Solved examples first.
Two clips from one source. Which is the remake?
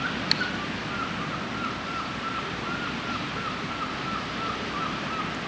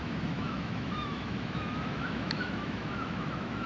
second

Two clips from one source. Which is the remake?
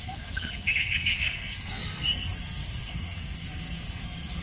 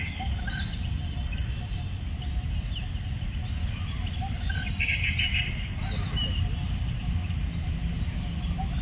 first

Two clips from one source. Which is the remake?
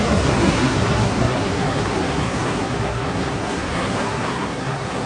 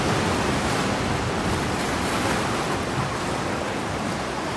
first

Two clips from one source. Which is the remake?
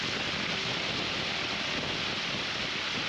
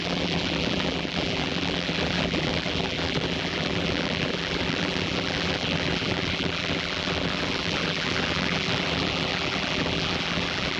second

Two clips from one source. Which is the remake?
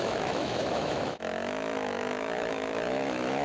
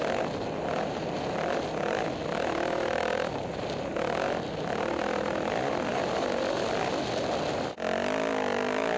first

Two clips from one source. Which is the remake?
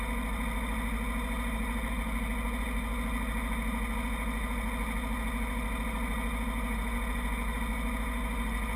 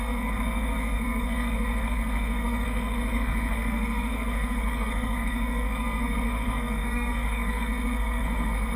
second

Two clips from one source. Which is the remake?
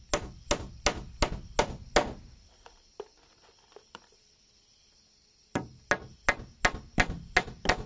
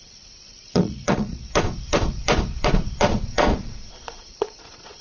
second